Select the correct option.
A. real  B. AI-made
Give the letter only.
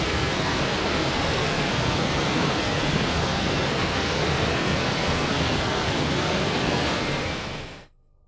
B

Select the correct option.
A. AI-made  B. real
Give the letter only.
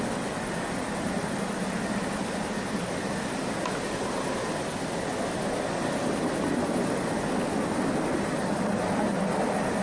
B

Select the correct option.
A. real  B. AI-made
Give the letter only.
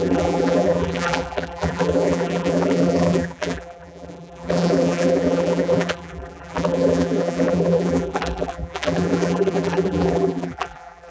B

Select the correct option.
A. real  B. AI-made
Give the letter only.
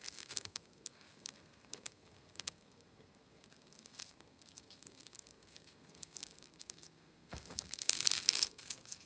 B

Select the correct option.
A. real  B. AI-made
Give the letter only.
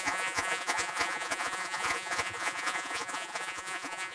B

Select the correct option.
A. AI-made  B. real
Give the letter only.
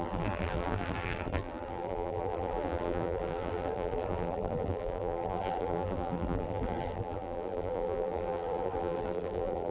A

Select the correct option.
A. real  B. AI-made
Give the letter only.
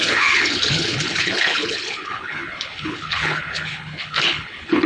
B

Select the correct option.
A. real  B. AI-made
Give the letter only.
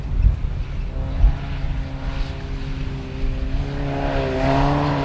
A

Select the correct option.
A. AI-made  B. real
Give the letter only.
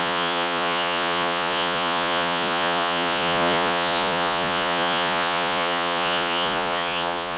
A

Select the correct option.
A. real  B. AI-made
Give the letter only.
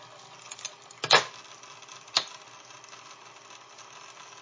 A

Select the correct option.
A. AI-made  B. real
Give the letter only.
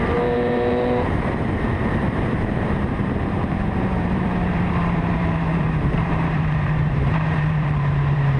A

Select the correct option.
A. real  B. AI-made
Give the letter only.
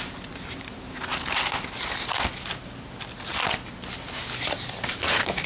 A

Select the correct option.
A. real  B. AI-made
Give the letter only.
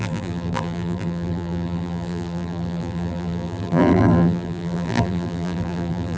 B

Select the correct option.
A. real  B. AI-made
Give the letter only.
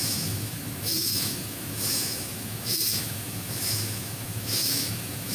B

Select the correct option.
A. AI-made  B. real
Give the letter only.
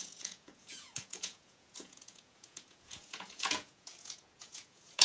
A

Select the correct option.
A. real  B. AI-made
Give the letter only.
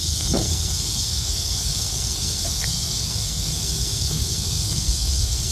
B